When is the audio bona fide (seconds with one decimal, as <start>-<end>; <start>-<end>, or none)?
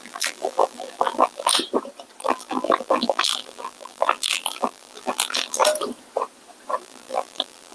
1.5-2.2; 5.6-6.8